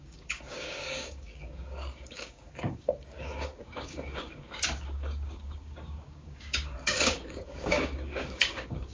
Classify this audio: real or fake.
fake